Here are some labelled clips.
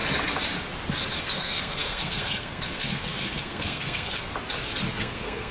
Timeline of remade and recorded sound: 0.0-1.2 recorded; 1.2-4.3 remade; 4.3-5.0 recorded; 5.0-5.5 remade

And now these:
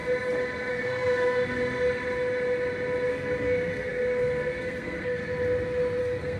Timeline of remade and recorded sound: 0.0-0.7 recorded; 0.7-1.5 remade; 1.5-3.1 recorded; 3.1-5.2 remade; 5.2-6.0 recorded; 6.0-6.4 remade

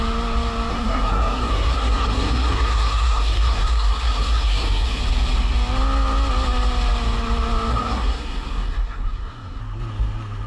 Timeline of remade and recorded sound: 0.0-0.7 recorded; 0.7-5.0 remade; 5.0-7.7 recorded; 7.7-9.6 remade; 9.6-10.5 recorded

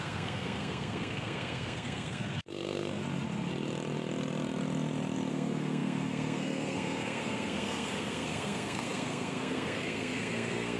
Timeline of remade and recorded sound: 0.0-3.0 remade; 3.0-5.3 recorded; 5.3-10.8 remade

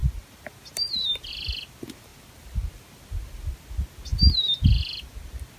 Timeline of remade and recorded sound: 0.0-5.6 recorded

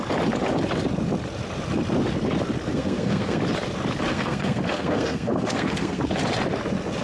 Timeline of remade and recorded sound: 0.0-2.7 recorded; 2.7-3.4 remade; 3.4-4.1 recorded; 4.1-6.0 remade; 6.0-7.0 recorded

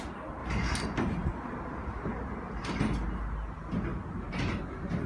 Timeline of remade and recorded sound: 0.0-5.1 recorded

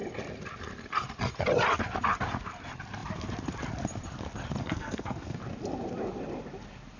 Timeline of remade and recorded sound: 0.0-4.6 recorded; 4.6-5.4 remade; 5.4-7.0 recorded